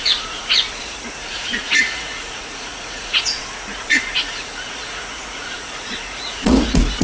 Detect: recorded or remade remade